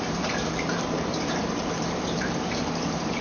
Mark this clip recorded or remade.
remade